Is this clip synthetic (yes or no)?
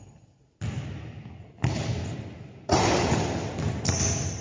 no